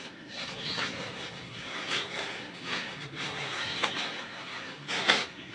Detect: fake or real fake